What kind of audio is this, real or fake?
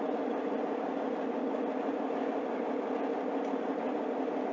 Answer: real